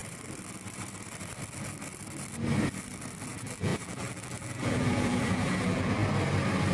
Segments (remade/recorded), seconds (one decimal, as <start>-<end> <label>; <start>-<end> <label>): 0.0-3.3 recorded; 3.3-6.0 remade; 6.0-6.7 recorded